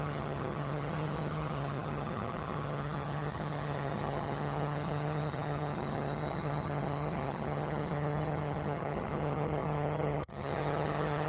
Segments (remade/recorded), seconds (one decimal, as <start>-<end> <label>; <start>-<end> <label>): 0.0-11.3 remade